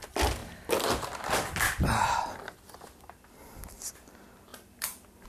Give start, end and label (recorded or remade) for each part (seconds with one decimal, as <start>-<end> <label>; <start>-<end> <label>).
0.0-4.5 recorded; 4.5-5.3 remade